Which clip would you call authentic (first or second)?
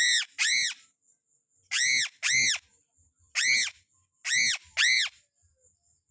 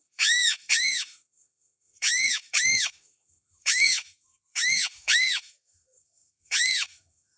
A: first